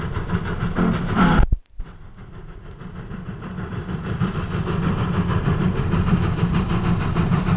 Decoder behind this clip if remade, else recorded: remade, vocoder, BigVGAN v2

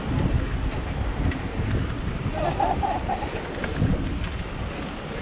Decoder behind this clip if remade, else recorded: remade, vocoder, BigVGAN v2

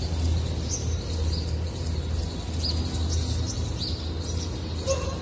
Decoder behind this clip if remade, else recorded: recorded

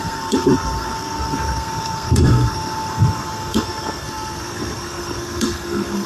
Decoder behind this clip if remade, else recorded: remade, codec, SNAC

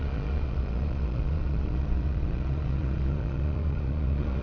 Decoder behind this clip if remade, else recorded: remade, vocoder, Vocos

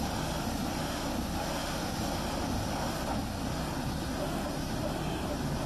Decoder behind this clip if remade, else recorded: recorded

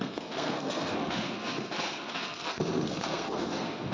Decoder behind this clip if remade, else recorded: remade, codec, SNAC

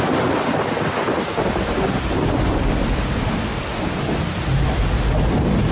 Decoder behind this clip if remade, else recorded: recorded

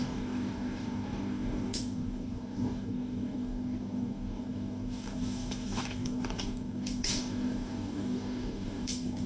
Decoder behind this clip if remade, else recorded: remade, codec, DAC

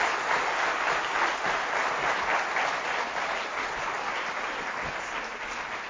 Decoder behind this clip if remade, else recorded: recorded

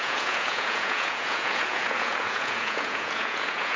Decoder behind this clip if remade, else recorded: remade, vocoder, Vocos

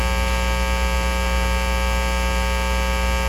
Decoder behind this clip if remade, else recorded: recorded